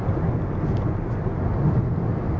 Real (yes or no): yes